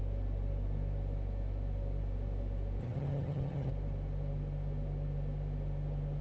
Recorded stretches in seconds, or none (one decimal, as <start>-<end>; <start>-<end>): 0.0-2.8; 3.7-6.2

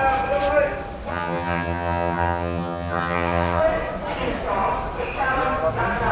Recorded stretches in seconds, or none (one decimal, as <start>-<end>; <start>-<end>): 0.0-1.1; 3.6-6.1

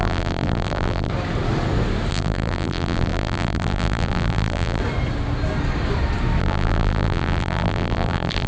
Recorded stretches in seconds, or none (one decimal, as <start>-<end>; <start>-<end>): 1.1-2.1; 4.8-6.4